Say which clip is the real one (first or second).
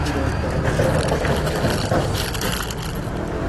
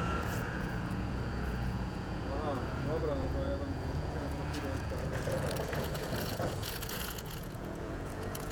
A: first